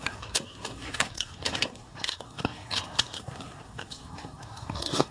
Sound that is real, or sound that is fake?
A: fake